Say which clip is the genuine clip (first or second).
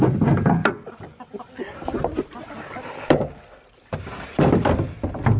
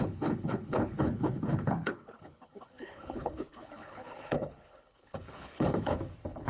first